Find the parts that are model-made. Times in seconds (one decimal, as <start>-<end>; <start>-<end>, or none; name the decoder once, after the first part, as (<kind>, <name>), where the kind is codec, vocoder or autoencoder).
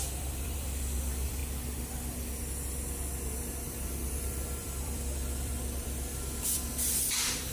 0.0-1.4 (vocoder, BigVGAN v2); 4.1-7.5